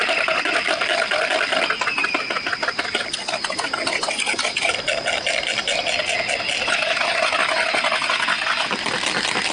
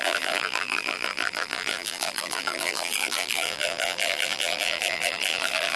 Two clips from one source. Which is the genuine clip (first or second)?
first